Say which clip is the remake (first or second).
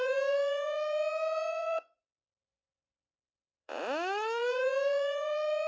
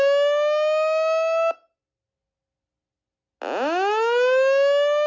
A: first